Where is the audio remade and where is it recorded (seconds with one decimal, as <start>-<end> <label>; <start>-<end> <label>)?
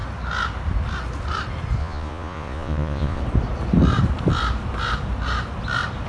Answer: 0.0-1.8 recorded; 1.8-3.2 remade; 3.2-6.1 recorded